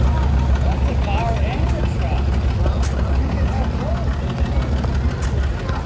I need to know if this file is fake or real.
real